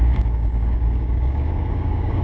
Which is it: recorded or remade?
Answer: remade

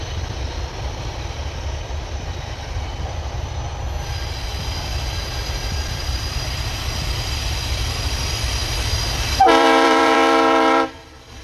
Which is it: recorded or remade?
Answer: remade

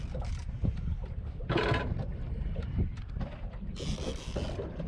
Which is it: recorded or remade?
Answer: recorded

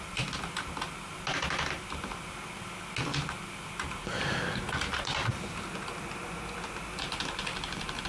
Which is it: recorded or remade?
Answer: recorded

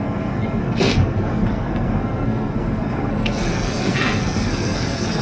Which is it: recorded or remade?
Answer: remade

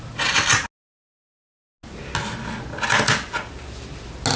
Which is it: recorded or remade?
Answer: recorded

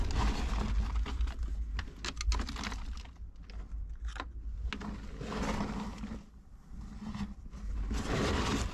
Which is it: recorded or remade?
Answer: recorded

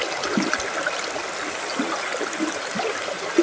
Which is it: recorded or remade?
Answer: recorded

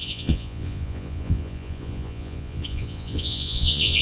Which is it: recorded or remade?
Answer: remade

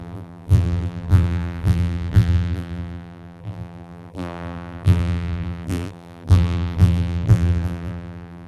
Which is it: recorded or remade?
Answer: remade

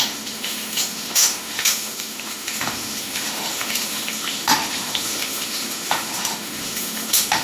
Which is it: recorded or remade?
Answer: remade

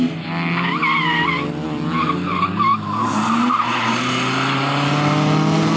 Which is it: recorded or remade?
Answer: recorded